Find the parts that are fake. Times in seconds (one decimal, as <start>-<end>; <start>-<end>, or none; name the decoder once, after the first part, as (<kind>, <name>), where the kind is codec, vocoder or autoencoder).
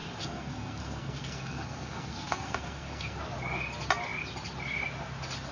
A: 0.0-3.2 (codec, SNAC)